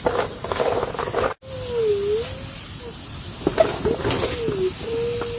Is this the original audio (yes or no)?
yes